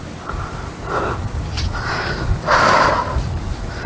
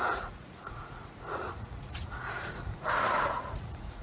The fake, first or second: second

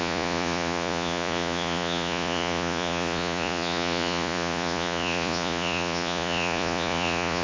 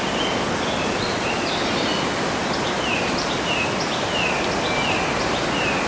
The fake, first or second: first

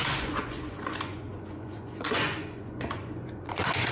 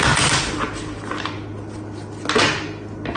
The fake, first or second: first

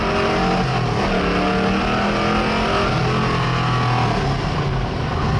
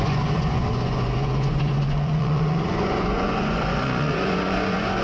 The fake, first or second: second